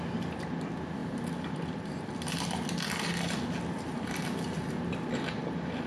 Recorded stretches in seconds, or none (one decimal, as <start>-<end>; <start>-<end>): 0.0-5.9